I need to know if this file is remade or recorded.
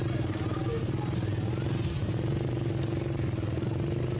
recorded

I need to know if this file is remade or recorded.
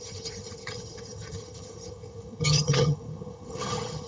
remade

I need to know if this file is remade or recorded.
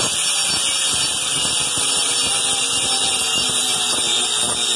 recorded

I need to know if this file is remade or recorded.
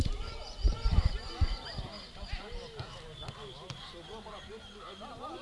recorded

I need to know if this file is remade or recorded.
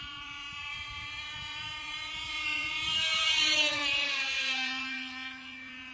remade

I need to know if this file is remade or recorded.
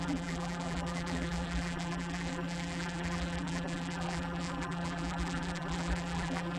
remade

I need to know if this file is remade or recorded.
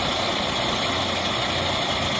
recorded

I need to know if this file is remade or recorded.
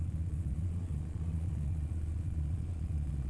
remade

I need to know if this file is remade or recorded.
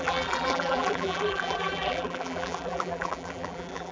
remade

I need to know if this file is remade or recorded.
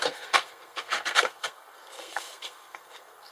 remade